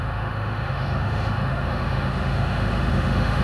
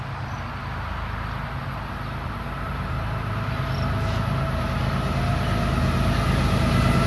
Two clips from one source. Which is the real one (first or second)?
second